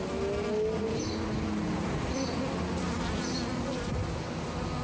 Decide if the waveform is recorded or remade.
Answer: recorded